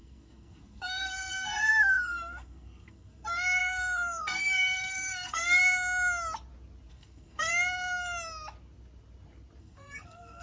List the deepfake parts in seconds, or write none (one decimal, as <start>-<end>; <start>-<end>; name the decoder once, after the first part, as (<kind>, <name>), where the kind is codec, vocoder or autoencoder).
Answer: 0.0-5.6 (codec, SNAC); 6.9-7.5; 9.6-10.4